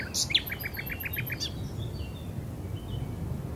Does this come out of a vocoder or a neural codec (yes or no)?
no